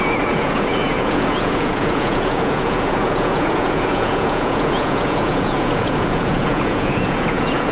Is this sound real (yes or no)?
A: no